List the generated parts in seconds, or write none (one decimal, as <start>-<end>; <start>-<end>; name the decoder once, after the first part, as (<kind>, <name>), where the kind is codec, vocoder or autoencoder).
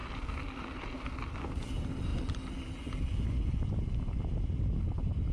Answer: none